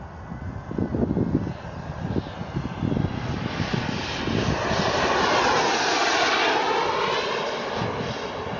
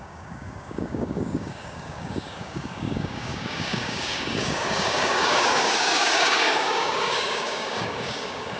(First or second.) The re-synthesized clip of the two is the second